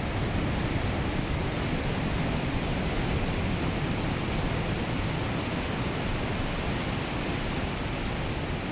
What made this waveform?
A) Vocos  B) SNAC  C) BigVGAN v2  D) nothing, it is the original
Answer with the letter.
D